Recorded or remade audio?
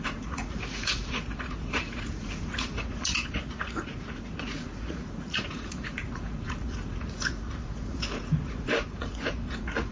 remade